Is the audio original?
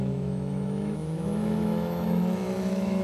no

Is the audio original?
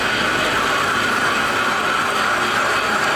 yes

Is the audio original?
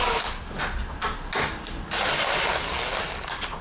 yes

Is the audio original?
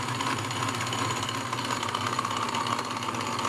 yes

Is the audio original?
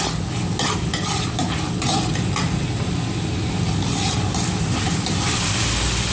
yes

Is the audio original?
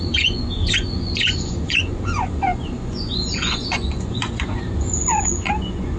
no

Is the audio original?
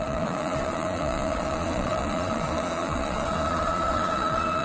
no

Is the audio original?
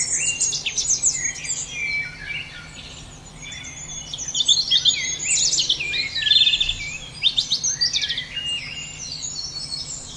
yes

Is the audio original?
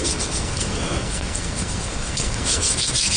no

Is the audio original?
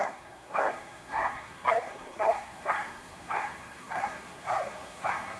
no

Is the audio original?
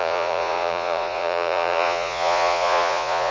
no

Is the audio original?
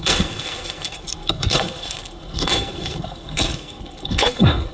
no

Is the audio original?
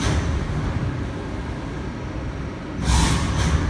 yes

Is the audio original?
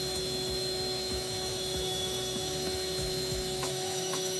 no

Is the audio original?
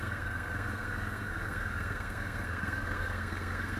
no